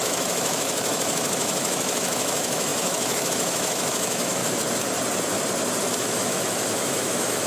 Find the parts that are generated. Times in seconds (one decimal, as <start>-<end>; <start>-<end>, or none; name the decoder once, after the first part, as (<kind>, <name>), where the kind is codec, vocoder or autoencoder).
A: 0.0-4.4 (autoencoder, DAC-VAE); 5.8-7.5